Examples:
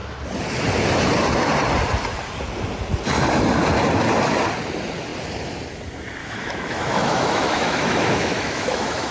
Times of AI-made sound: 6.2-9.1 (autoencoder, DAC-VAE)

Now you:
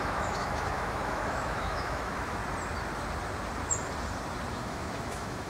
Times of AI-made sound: 0.0-2.4 (autoencoder, DAC-VAE); 4.5-5.5

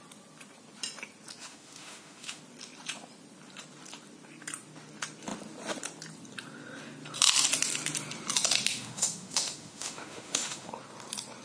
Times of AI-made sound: 1.4-2.4 (autoencoder, DAC-VAE); 8.7-10.7

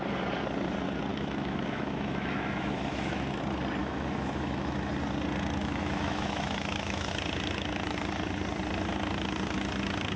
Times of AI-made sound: 1.1-3.4 (autoencoder, DAC-VAE); 3.8-4.9; 5.6-7.1